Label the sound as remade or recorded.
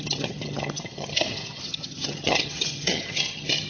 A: remade